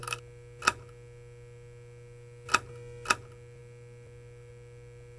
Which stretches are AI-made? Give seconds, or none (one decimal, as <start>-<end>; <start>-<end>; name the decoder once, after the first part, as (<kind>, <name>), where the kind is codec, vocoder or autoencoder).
none